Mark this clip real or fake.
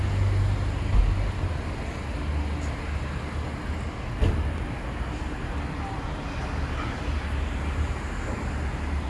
real